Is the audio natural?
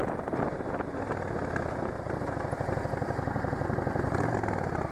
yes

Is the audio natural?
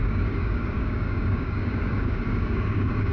no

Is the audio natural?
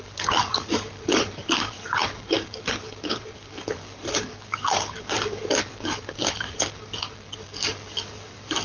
no